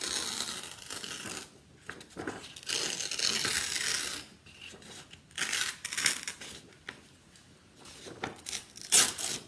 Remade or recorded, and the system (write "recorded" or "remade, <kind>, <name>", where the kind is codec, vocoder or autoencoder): recorded